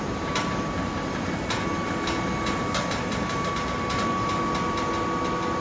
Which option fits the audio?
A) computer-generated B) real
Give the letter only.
B